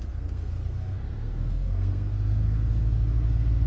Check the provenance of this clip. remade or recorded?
remade